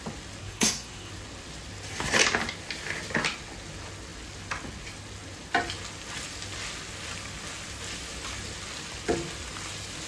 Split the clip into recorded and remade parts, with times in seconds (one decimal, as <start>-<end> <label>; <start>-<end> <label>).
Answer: 0.0-0.4 recorded; 0.4-1.1 remade; 1.1-10.1 recorded